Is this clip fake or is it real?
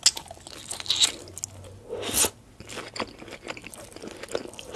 real